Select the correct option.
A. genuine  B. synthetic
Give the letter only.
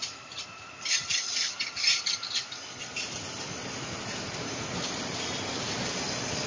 A